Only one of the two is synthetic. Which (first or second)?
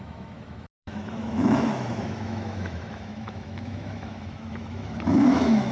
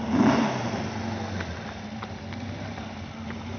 first